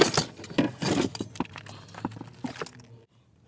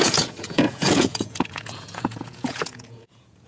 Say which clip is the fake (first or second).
second